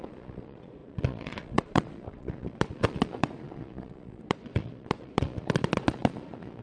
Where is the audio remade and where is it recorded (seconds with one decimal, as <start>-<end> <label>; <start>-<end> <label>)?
0.0-6.6 remade

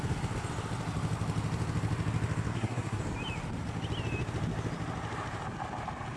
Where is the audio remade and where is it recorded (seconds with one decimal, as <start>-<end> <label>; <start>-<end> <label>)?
0.0-2.5 recorded; 2.5-3.0 remade; 3.0-6.2 recorded

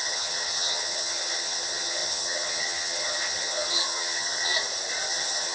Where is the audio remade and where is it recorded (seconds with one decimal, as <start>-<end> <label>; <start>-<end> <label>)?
0.0-4.5 remade; 4.5-5.1 recorded; 5.1-5.5 remade